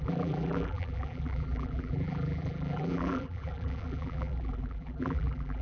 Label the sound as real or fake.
fake